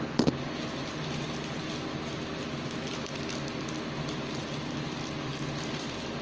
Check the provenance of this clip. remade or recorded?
recorded